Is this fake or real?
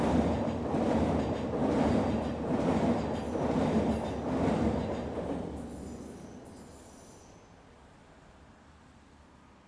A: real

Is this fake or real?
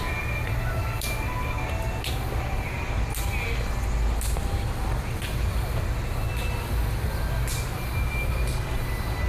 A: real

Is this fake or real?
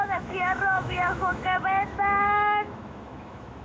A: fake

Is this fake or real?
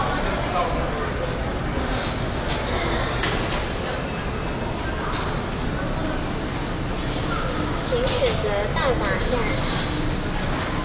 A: real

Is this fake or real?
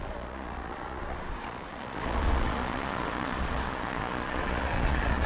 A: fake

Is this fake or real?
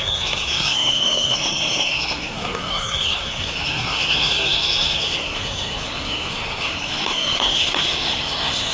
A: fake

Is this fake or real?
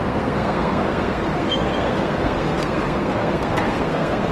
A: fake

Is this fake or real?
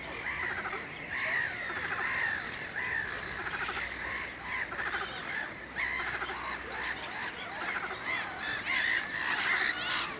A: real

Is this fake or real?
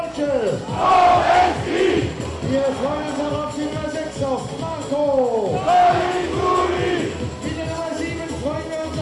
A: real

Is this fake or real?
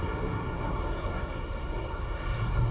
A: fake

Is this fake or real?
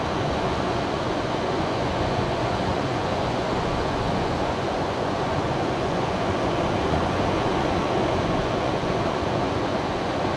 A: fake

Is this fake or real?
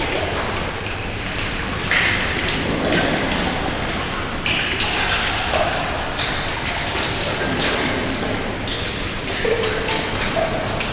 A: real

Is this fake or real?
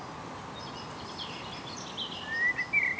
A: real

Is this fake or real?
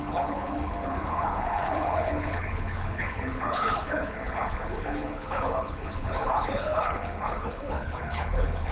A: fake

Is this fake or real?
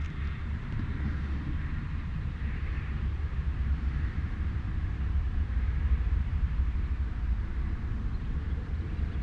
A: fake